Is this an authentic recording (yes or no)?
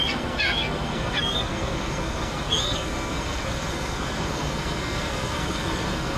no